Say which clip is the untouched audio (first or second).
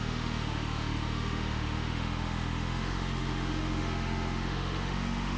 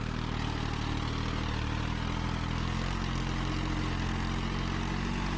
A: second